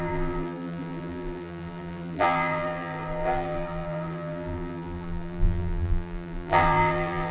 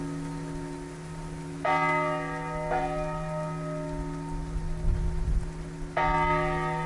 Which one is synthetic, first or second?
first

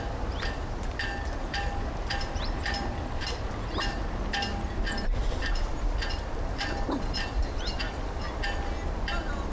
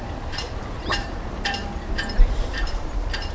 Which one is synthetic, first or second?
second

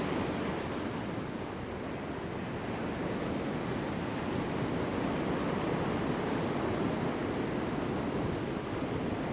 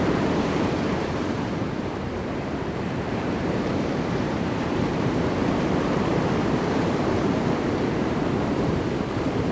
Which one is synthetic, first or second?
second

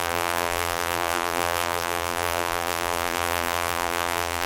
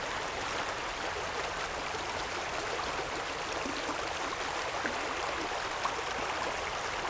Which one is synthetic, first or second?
first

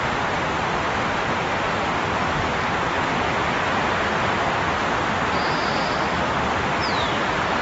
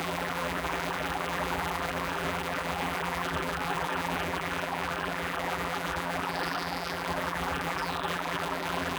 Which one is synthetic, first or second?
second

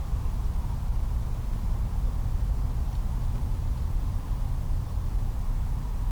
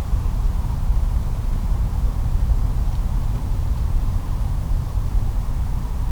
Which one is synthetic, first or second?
second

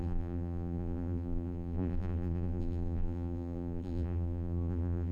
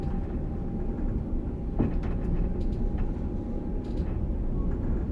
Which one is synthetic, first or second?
first